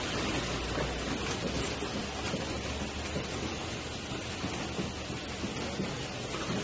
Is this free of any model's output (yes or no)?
yes